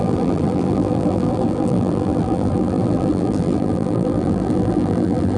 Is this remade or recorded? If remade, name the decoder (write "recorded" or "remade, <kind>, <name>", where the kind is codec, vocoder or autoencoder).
remade, vocoder, BigVGAN v2